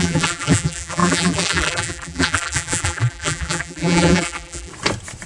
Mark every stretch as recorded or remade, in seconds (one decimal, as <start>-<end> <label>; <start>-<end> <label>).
0.0-4.7 remade; 4.7-5.3 recorded